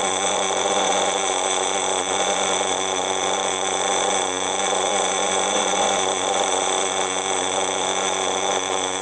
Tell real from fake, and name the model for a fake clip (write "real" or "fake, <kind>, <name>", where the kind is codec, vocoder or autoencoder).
fake, vocoder, Vocos